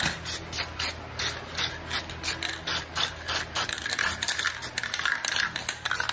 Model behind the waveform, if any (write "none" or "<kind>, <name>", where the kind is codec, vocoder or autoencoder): none